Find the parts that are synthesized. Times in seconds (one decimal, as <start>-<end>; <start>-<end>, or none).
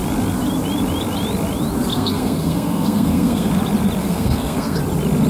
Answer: 1.9-3.5; 4.0-4.8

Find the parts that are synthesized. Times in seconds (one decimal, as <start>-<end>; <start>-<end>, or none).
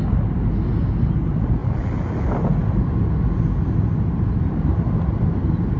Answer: none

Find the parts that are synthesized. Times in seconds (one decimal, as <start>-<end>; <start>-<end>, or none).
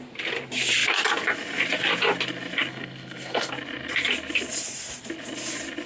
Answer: 2.7-3.5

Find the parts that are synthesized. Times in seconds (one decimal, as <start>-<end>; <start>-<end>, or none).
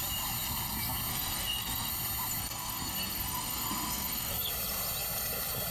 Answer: 1.1-1.9; 2.4-4.5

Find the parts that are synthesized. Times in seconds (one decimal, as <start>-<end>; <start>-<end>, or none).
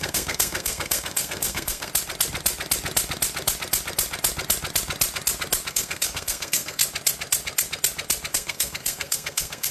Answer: 0.0-1.9; 5.7-6.8; 8.3-9.7